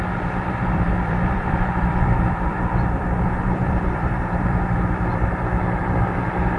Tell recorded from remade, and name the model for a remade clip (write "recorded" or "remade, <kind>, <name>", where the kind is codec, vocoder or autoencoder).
remade, vocoder, BigVGAN v2